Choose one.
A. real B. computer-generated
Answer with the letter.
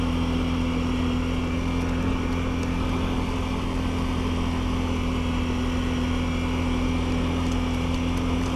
A